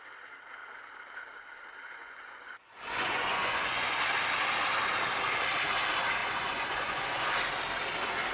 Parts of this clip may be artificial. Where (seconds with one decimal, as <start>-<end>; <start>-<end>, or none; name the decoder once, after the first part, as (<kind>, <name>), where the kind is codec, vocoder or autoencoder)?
2.0-4.0 (vocoder, Vocos); 6.2-7.3